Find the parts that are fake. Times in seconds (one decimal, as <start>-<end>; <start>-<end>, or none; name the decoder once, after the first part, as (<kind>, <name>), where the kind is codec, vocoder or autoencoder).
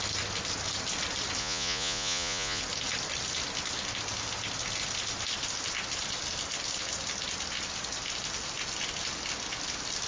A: 1.4-2.6 (vocoder, Vocos)